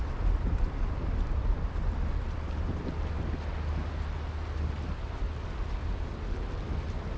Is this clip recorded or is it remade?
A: recorded